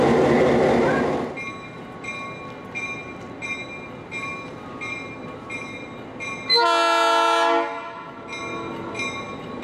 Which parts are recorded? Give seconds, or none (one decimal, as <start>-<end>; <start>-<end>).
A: 0.0-9.6